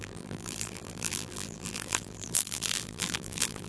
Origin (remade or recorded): remade